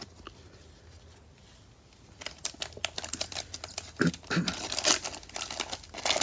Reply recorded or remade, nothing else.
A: recorded